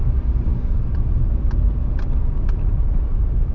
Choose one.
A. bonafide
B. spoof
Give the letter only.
B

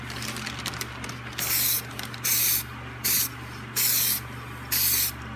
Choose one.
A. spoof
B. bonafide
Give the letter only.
B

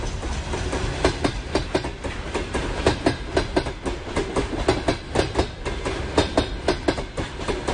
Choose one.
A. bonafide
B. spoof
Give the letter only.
A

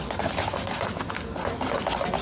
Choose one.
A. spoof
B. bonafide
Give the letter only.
B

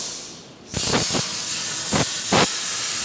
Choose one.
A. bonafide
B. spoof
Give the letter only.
A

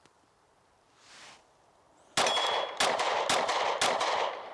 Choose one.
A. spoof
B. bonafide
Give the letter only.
B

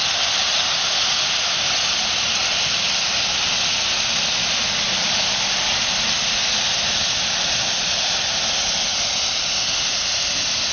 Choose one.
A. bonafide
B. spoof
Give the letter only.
A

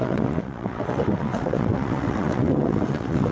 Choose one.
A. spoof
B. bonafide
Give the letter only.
A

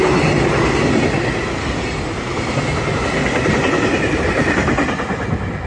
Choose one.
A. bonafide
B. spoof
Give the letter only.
A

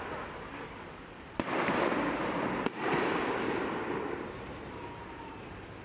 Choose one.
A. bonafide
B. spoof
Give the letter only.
A